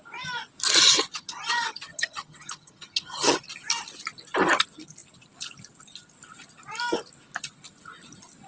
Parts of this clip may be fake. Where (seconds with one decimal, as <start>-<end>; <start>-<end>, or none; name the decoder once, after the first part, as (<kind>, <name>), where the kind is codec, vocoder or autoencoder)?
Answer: 1.1-3.4 (vocoder, HiFi-GAN)